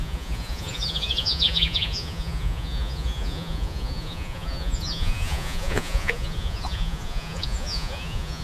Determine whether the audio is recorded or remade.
remade